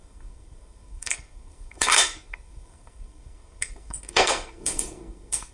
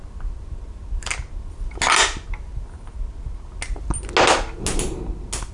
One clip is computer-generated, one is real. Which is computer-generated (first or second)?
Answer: first